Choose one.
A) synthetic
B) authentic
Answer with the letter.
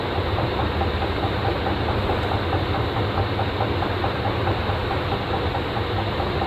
B